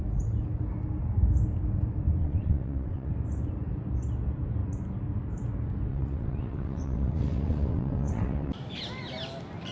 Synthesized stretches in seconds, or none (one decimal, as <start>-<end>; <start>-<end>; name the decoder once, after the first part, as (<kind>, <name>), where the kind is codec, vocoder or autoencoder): 2.2-3.1 (vocoder, WaveNeXt); 5.9-8.5